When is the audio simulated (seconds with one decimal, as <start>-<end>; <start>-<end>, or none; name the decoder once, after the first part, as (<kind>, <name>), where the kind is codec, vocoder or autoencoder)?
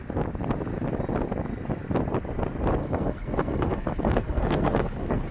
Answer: 2.8-5.3 (codec, SNAC)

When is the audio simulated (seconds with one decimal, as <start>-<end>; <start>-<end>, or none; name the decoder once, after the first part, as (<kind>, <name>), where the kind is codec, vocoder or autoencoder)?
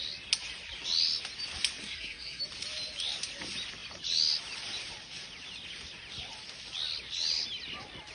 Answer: 1.8-2.4 (codec, SNAC)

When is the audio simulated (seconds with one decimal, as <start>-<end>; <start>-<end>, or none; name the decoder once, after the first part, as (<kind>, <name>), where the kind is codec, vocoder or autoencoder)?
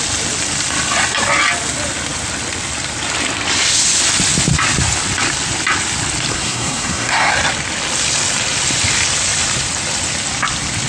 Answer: 6.3-7.3 (codec, SNAC)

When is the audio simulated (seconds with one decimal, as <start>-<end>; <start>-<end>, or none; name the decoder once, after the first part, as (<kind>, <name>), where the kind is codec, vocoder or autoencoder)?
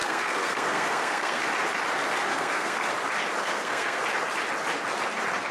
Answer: 0.0-1.4 (codec, SNAC); 2.3-2.9; 3.4-4.0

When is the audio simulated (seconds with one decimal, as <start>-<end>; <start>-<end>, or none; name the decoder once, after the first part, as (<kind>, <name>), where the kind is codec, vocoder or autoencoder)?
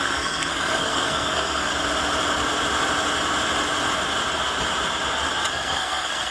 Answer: 0.0-1.7 (codec, SNAC); 5.5-6.3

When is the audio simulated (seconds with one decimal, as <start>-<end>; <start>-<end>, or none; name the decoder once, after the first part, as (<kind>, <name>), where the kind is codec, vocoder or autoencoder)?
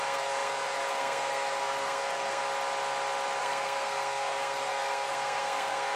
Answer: 0.0-2.4 (codec, SNAC); 3.4-6.0